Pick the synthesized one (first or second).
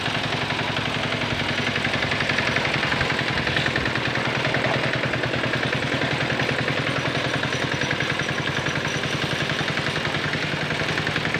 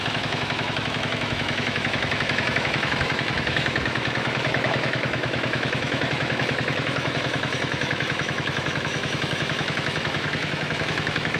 second